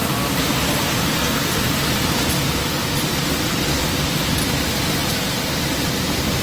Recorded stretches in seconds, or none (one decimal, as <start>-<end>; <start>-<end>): 0.0-6.4